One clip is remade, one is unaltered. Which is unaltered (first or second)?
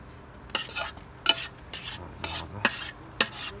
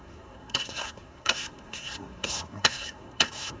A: first